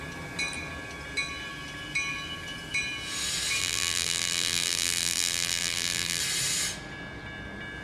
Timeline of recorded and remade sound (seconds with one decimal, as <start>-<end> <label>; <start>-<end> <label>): 0.0-3.6 recorded; 3.6-6.2 remade; 6.2-7.8 recorded